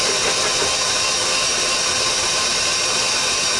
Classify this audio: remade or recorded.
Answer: recorded